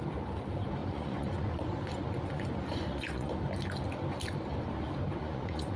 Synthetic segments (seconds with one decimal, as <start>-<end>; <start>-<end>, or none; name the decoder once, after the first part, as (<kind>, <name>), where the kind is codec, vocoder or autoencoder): 0.8-3.3 (vocoder, Vocos); 5.2-5.8